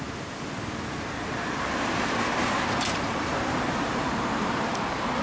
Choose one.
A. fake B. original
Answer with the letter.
A